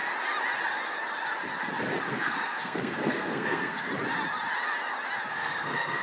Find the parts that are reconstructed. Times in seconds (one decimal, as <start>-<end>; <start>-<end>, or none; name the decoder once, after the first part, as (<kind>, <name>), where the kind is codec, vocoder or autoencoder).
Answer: 2.1-3.9 (codec, SNAC); 5.3-6.0